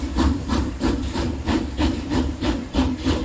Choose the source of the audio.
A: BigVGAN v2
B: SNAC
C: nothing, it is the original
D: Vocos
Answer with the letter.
A